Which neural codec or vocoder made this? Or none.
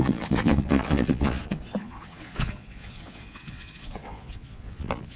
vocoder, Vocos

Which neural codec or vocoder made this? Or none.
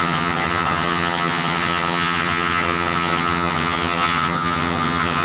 vocoder, HiFi-GAN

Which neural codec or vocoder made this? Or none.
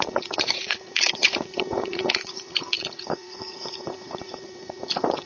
vocoder, Vocos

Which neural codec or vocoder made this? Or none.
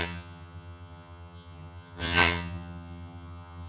vocoder, HiFi-GAN